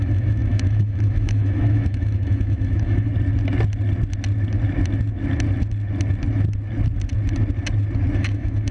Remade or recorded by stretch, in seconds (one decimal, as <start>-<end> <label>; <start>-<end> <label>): 0.0-3.1 remade; 3.1-8.2 recorded; 8.2-8.7 remade

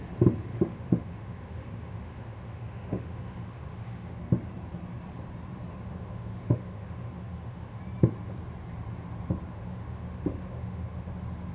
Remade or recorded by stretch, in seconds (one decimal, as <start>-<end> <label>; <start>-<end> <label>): 0.0-0.5 recorded; 0.5-4.2 remade; 4.2-5.7 recorded; 5.7-7.8 remade; 7.8-9.5 recorded; 9.5-11.1 remade; 11.1-11.5 recorded

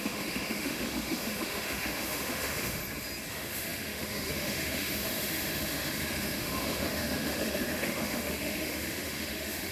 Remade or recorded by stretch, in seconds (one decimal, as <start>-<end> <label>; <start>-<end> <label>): 0.0-2.8 remade; 2.8-3.3 recorded; 3.3-9.7 remade

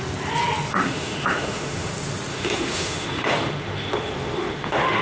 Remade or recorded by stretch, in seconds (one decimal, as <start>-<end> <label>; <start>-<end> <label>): 0.0-0.7 recorded; 0.7-1.9 remade; 1.9-2.3 recorded; 2.3-5.0 remade

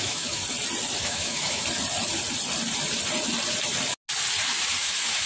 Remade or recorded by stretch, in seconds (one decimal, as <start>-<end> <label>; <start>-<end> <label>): 0.0-0.4 remade; 0.4-1.0 recorded; 1.0-1.6 remade; 1.6-4.8 recorded; 4.8-5.3 remade